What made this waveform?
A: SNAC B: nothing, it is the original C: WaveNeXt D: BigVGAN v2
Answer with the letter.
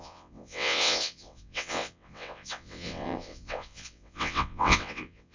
C